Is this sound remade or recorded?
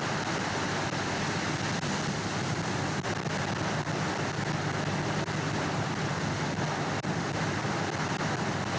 recorded